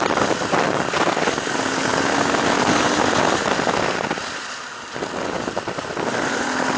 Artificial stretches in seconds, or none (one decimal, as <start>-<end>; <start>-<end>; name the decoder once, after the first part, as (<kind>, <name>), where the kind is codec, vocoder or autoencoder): none